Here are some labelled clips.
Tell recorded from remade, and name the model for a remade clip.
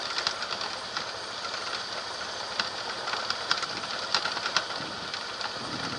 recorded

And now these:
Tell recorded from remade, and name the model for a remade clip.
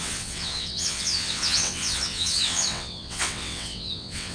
remade, vocoder, WaveNeXt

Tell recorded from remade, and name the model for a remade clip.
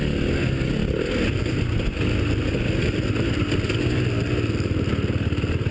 recorded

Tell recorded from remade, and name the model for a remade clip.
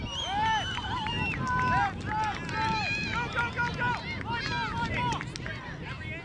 recorded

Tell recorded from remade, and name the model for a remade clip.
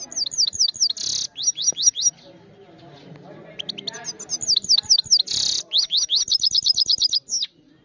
recorded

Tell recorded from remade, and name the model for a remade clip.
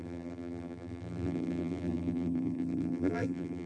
remade, vocoder, BigVGAN v2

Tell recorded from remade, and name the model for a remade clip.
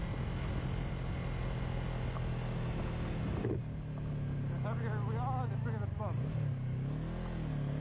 recorded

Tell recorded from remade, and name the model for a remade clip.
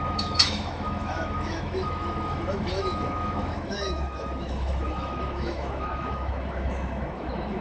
remade, autoencoder, DAC-VAE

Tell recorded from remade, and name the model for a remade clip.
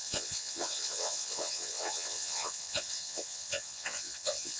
remade, vocoder, WaveNeXt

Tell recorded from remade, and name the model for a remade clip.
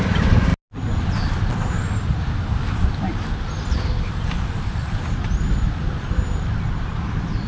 recorded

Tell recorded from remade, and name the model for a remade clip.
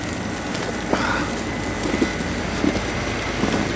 recorded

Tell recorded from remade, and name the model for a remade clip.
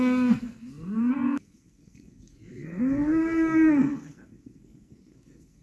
remade, codec, SNAC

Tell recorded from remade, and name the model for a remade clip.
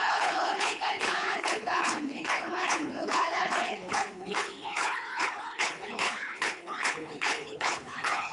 remade, codec, HILCodec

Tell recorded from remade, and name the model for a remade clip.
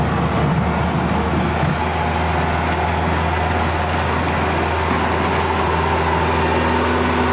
recorded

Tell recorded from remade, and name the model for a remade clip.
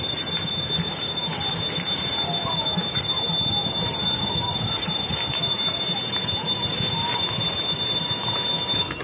recorded